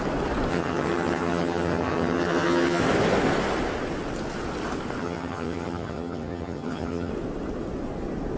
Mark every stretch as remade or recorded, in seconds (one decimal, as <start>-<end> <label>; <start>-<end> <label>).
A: 0.0-0.5 recorded; 0.5-2.8 remade; 2.8-5.0 recorded; 5.0-7.1 remade; 7.1-8.4 recorded